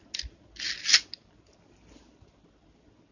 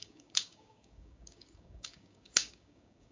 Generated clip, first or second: second